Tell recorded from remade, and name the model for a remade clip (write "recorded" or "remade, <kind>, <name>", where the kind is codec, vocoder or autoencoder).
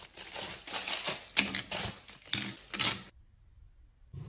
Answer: recorded